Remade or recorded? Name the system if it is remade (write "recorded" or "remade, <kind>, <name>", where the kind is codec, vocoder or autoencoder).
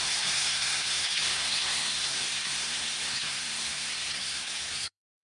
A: remade, codec, SNAC